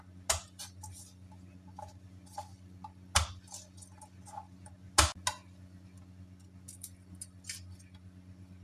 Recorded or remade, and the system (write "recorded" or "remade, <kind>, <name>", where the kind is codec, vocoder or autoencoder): recorded